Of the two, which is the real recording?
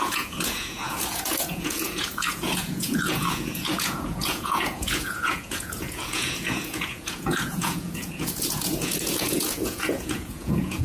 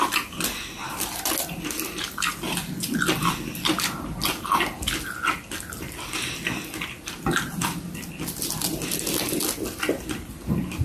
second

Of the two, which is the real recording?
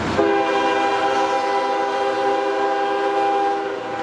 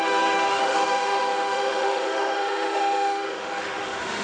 first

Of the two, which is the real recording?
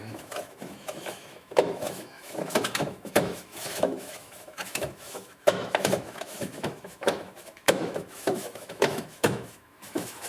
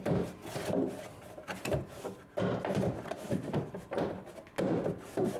second